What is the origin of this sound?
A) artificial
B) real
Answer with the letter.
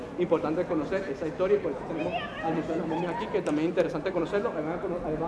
B